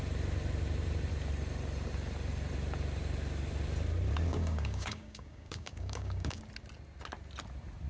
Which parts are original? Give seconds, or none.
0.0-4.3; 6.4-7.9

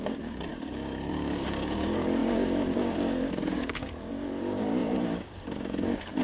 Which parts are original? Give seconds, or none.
none